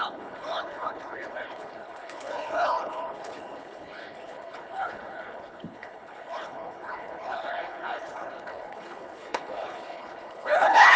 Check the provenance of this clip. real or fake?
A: fake